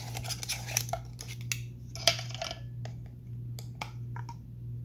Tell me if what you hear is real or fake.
real